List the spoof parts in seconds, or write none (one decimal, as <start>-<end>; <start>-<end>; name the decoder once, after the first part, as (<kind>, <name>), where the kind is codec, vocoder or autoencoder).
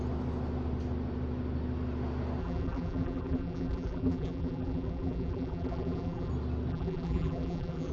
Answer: 2.4-6.3 (vocoder, BigVGAN v2); 6.7-7.9